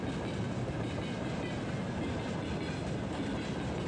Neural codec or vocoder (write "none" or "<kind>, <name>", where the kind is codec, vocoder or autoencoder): none